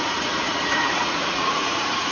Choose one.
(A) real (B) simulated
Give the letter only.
B